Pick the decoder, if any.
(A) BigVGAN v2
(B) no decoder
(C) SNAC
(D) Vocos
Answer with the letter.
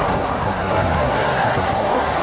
C